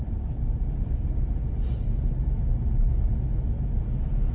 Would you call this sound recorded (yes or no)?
yes